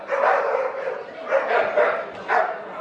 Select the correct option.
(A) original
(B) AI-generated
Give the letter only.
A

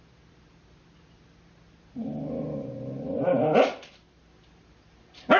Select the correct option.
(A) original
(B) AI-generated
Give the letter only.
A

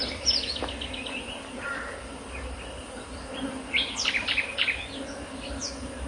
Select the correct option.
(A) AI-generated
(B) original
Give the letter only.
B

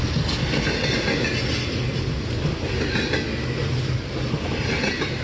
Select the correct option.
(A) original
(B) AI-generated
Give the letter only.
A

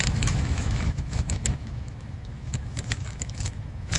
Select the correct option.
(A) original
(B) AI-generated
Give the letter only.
B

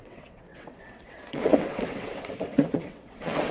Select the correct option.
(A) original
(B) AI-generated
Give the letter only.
B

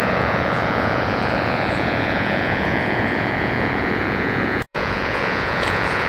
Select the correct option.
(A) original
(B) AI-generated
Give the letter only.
B